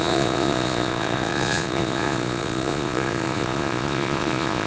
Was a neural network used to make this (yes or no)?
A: yes